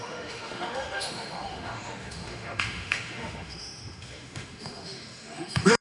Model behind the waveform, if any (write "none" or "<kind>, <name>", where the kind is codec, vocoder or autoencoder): autoencoder, DAC-VAE